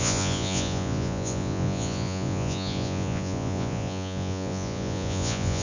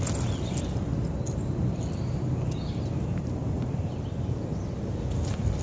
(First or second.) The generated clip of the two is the first